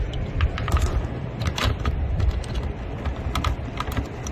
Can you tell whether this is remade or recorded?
recorded